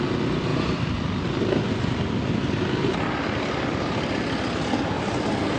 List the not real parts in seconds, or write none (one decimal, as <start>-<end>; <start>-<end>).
0.0-0.5; 3.4-5.6